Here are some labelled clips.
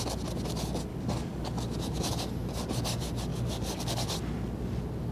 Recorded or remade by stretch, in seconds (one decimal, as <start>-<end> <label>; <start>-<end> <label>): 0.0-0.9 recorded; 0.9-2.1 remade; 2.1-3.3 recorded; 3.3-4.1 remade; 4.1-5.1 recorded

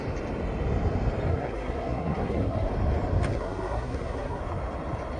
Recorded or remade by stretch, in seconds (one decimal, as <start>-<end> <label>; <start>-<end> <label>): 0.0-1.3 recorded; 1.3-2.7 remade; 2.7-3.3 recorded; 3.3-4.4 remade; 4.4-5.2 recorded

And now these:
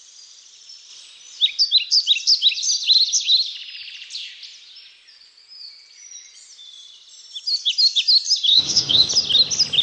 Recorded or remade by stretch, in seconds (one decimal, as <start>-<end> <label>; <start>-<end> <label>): 0.0-8.5 recorded; 8.5-9.1 remade; 9.1-9.8 recorded

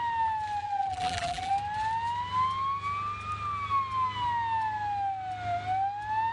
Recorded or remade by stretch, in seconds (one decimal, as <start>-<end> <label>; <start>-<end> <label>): 0.0-0.6 recorded; 0.6-1.5 remade; 1.5-6.3 recorded

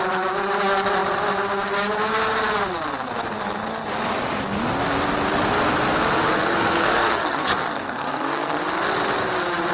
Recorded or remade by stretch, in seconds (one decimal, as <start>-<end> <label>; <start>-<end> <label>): 0.0-6.3 recorded; 6.3-8.6 remade; 8.6-9.7 recorded

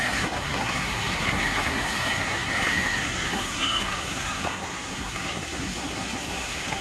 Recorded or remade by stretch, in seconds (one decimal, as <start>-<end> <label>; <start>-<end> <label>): 0.0-6.8 remade

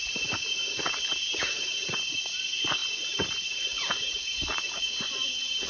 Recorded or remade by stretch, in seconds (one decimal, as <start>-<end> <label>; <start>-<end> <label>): 0.0-5.7 recorded